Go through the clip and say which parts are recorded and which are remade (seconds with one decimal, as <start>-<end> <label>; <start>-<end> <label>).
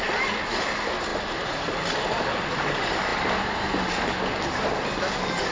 0.0-5.5 recorded